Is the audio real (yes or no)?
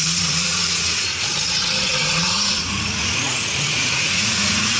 no